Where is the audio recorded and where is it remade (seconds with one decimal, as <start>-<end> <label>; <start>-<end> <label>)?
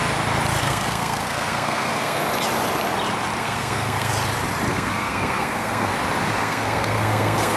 0.0-0.6 recorded; 0.6-2.2 remade; 2.2-3.4 recorded; 3.4-4.1 remade; 4.1-4.7 recorded; 4.7-5.9 remade; 5.9-6.4 recorded; 6.4-7.6 remade